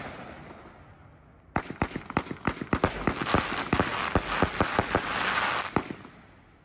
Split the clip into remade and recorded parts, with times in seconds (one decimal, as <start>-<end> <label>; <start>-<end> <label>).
0.0-6.6 recorded